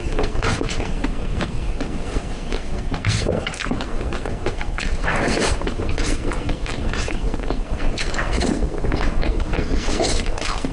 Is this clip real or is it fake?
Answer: fake